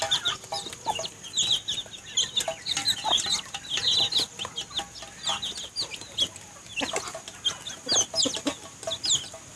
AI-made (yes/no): no